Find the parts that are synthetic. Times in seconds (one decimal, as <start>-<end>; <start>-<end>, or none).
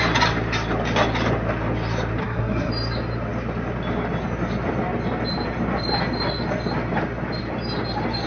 2.2-2.7